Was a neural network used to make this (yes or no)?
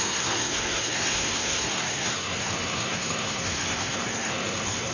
yes